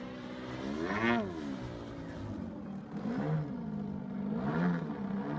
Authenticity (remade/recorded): recorded